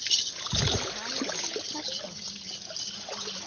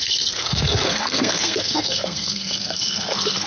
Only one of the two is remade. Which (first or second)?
second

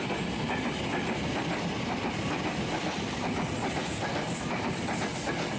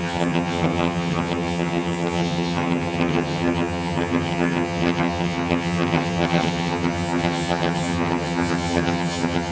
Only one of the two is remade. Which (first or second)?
second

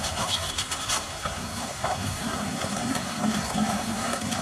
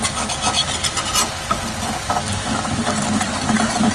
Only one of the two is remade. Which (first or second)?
first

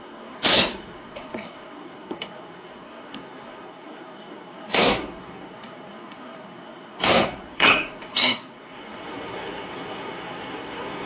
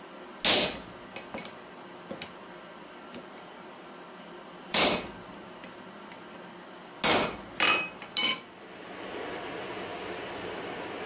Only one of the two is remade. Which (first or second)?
first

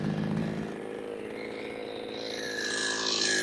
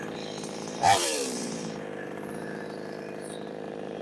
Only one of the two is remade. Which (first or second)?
second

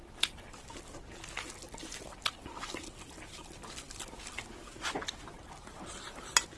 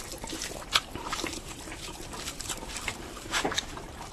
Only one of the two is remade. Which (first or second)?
second